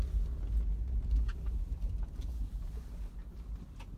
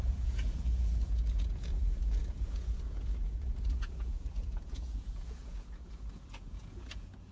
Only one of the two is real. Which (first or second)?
first